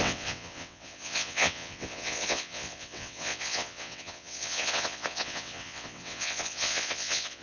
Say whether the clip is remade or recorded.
remade